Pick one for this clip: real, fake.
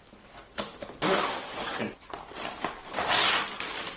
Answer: real